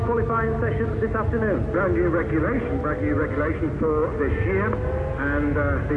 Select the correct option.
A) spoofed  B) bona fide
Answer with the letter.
B